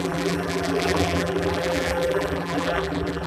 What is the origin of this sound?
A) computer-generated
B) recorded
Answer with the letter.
A